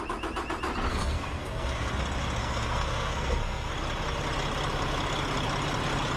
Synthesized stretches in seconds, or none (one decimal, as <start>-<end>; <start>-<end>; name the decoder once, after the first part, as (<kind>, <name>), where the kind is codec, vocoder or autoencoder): 0.9-1.9 (codec, SNAC); 2.4-3.7